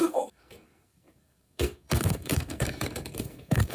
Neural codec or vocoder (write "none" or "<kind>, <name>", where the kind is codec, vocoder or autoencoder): codec, SNAC